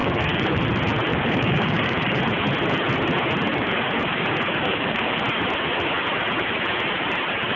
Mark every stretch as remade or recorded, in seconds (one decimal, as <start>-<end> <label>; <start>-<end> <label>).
0.0-0.6 remade; 0.6-1.1 recorded; 1.1-2.2 remade; 2.2-3.5 recorded; 3.5-5.2 remade; 5.2-7.6 recorded